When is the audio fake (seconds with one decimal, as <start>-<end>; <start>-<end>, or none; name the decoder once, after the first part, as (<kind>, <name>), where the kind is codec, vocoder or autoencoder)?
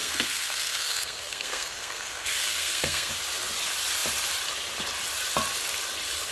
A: 0.0-3.1 (codec, SNAC)